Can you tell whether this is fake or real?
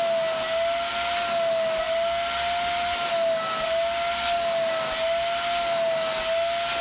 real